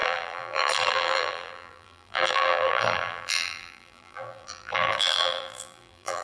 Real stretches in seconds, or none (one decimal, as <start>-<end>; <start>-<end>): none